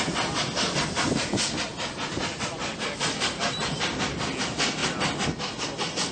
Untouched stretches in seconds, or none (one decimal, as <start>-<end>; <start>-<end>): 0.0-6.1